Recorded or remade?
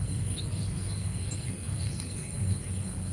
remade